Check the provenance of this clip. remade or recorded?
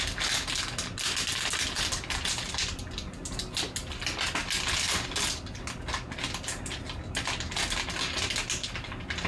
recorded